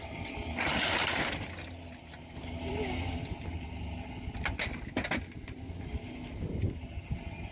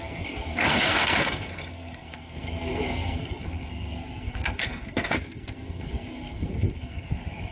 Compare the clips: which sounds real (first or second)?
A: first